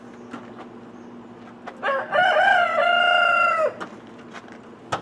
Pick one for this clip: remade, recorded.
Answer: recorded